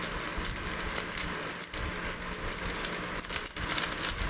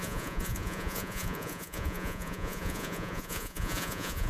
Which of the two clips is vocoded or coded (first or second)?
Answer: second